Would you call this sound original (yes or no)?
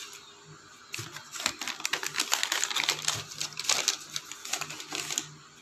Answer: yes